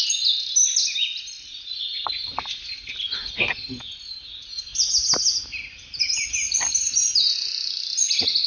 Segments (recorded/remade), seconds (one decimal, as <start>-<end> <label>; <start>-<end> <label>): 0.0-8.5 recorded